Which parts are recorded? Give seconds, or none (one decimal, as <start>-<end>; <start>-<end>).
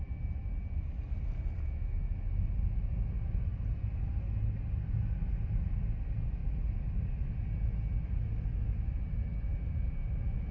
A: 0.0-10.5